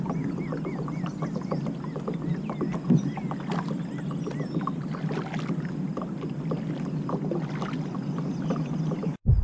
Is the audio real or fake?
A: real